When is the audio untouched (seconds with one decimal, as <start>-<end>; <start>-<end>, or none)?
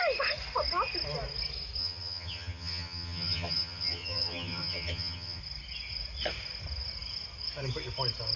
0.0-1.8; 5.4-8.4